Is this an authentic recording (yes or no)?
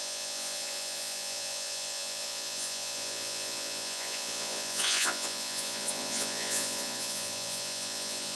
no